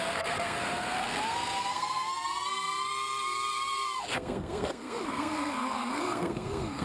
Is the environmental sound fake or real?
fake